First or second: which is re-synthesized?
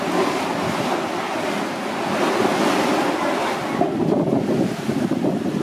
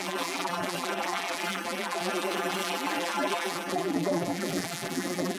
second